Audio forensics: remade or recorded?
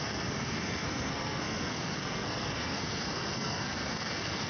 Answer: remade